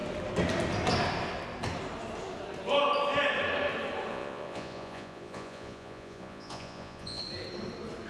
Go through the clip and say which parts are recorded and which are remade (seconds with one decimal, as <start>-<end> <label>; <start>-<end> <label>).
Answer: 0.0-4.1 recorded; 4.1-7.2 remade; 7.2-8.1 recorded